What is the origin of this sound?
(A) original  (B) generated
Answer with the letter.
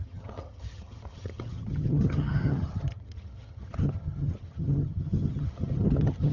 B